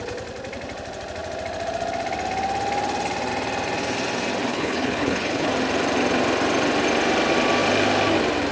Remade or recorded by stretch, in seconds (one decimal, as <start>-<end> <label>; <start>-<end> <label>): 0.0-4.5 recorded; 4.5-5.5 remade; 5.5-8.5 recorded